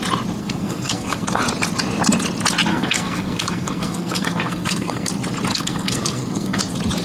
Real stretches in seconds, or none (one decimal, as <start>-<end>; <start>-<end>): 0.0-0.4; 1.4-2.7; 5.1-5.5; 6.6-7.0